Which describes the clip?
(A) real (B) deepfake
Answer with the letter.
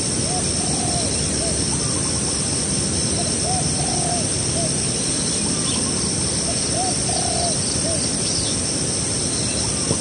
A